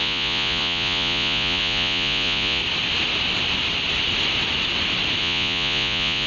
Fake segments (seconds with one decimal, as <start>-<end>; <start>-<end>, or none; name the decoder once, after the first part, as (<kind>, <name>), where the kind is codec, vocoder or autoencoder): 0.0-2.6 (vocoder, Vocos); 5.2-6.3